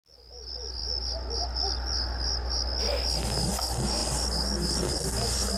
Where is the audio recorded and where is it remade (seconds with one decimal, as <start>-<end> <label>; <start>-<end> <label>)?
0.0-5.6 recorded